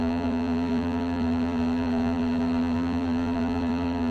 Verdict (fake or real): fake